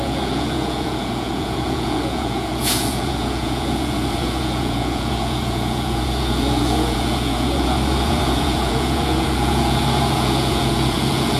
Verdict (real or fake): fake